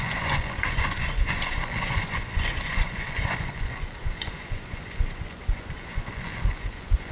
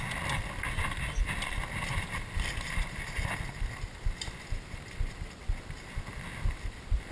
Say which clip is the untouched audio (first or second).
second